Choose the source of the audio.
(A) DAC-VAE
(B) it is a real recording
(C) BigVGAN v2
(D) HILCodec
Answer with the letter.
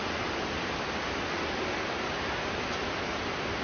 B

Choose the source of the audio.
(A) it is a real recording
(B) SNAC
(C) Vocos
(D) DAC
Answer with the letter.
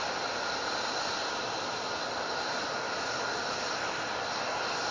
A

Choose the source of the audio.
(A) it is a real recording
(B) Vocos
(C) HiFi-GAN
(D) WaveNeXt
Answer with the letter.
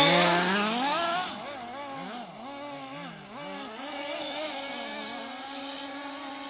A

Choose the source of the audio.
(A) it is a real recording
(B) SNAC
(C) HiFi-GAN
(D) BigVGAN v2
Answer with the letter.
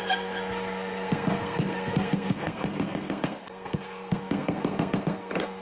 B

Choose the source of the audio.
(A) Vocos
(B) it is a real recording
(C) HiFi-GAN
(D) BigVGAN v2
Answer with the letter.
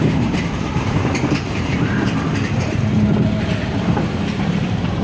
D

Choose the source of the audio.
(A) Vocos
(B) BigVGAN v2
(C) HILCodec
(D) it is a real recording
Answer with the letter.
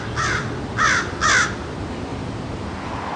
D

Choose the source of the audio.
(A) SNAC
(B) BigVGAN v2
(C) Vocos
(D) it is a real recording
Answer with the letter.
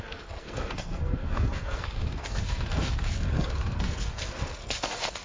A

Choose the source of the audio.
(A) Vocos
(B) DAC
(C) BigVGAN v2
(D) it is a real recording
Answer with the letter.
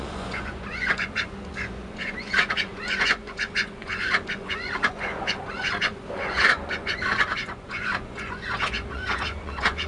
A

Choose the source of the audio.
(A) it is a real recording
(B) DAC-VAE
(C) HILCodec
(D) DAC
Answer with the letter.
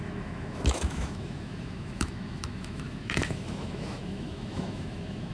B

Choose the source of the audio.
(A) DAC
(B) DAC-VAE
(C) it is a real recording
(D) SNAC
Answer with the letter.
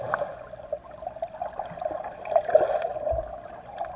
C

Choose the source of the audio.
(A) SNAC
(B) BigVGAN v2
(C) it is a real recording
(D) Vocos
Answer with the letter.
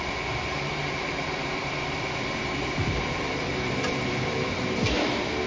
B